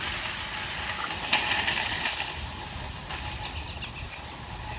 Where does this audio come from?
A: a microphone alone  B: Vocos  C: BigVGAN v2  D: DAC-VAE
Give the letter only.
A